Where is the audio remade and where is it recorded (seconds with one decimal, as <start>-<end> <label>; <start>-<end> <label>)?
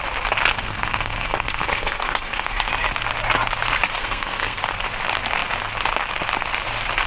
0.0-0.5 recorded; 0.5-2.7 remade; 2.7-4.0 recorded; 4.0-4.6 remade; 4.6-7.1 recorded